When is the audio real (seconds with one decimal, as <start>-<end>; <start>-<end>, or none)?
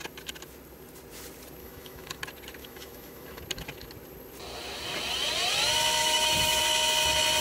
0.0-1.6; 2.2-2.6; 3.4-6.0; 6.6-7.4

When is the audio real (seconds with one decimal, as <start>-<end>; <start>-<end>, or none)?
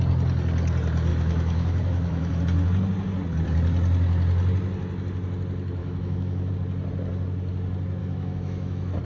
0.0-1.1; 2.4-5.8; 6.5-8.0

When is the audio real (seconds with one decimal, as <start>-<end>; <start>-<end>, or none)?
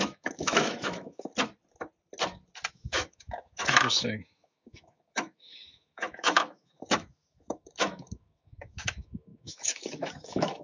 1.3-2.7